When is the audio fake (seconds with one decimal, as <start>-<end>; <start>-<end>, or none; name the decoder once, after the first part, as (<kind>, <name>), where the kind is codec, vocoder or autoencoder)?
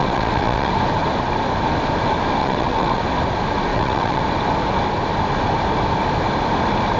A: 0.0-0.7 (vocoder, WaveNeXt); 2.4-3.0; 3.7-4.2